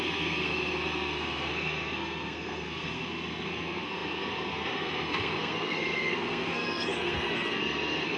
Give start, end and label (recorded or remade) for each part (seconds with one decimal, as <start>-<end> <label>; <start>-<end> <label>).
0.0-8.2 remade

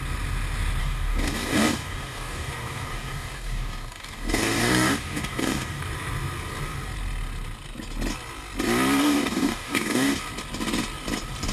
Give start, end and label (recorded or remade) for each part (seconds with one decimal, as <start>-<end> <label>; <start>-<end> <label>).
0.0-0.8 recorded; 0.8-5.8 remade; 5.8-9.0 recorded; 9.0-10.2 remade; 10.2-11.5 recorded